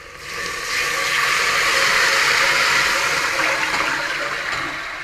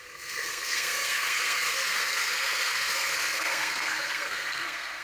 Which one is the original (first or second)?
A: first